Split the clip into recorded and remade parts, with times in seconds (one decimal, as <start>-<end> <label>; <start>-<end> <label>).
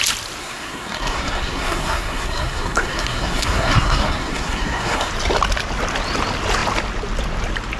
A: 0.0-0.4 recorded; 0.4-5.1 remade; 5.1-7.8 recorded